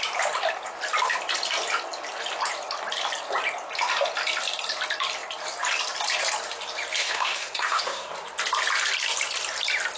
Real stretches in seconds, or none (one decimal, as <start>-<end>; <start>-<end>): 0.0-7.0; 8.1-10.0